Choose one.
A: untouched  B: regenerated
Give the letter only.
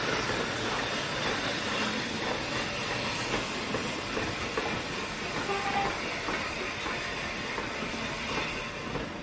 A